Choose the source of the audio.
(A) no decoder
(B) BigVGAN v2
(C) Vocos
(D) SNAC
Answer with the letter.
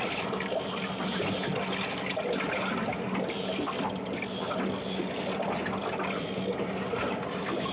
A